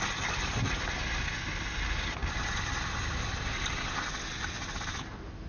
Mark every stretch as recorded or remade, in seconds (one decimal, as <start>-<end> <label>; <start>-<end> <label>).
0.0-5.5 recorded